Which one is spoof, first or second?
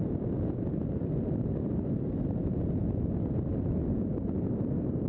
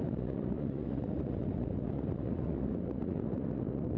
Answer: second